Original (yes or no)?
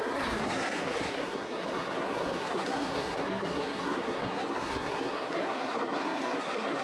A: no